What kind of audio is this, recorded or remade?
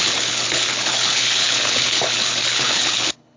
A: remade